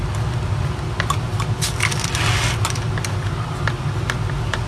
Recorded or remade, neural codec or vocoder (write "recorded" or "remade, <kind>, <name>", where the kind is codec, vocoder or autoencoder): recorded